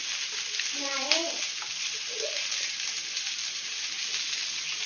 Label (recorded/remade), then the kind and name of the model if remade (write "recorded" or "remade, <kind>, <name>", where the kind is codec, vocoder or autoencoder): recorded